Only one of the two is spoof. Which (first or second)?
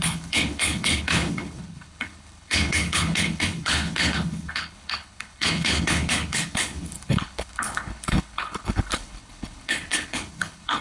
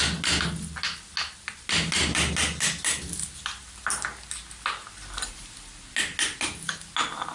first